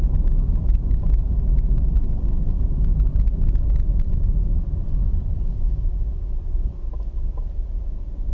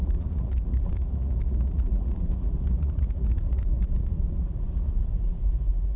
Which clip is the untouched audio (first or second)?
first